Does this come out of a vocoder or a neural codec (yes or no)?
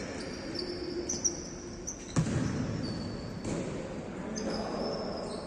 no